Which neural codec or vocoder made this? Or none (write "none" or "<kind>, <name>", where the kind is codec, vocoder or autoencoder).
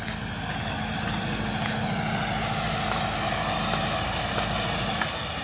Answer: none